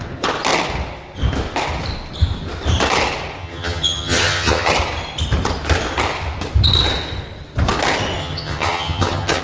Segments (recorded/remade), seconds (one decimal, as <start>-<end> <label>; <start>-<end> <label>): 0.0-3.4 recorded; 3.4-4.7 remade; 4.7-8.2 recorded; 8.2-9.4 remade